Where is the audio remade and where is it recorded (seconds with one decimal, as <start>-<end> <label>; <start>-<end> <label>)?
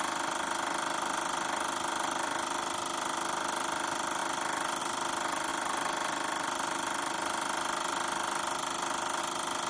0.0-9.7 recorded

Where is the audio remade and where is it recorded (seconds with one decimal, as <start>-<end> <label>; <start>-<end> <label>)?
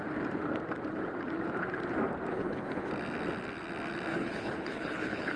0.0-2.3 recorded; 2.3-2.9 remade; 2.9-4.1 recorded; 4.1-5.4 remade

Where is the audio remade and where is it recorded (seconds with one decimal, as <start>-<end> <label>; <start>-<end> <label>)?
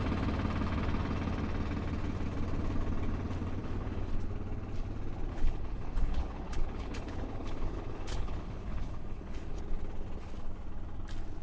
0.0-3.6 recorded; 3.6-4.1 remade; 4.1-5.3 recorded; 5.3-9.6 remade; 9.6-11.4 recorded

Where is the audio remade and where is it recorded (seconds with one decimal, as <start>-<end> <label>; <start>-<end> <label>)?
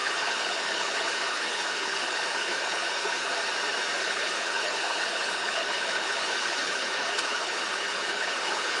0.0-3.3 remade; 3.3-4.0 recorded; 4.0-8.8 remade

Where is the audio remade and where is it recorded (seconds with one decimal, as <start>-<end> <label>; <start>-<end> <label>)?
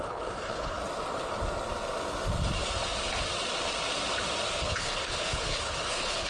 0.0-0.8 remade; 0.8-4.6 recorded; 4.6-6.3 remade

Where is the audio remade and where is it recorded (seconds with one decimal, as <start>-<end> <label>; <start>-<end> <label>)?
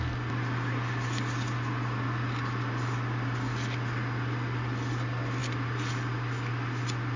0.0-7.2 recorded